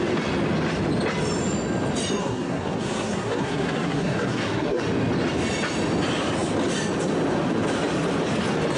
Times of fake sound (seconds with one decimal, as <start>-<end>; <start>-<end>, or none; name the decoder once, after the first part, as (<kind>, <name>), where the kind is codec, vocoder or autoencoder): 2.2-4.8 (codec, SNAC)